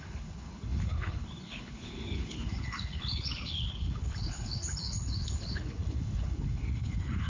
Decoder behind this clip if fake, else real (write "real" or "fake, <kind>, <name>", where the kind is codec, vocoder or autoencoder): fake, codec, HILCodec